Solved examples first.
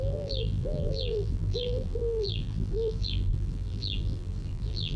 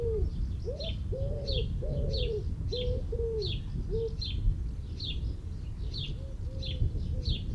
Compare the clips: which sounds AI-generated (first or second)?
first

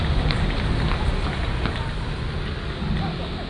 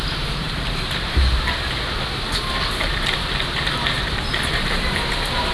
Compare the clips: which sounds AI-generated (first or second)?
second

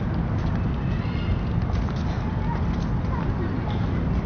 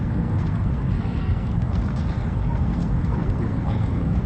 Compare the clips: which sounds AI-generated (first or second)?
second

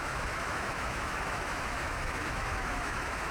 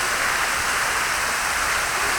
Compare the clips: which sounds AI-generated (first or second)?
first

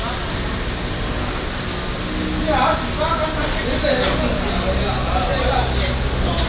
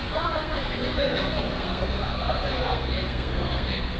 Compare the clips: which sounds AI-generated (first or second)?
second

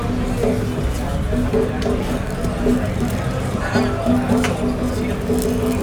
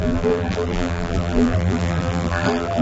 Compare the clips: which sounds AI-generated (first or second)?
second